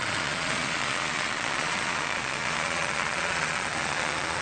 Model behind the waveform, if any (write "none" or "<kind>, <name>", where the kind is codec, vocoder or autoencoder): vocoder, Vocos